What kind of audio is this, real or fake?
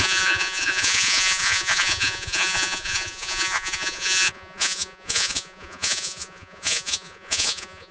fake